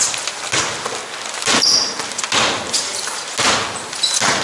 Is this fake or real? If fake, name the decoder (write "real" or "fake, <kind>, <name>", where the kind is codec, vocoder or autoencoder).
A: real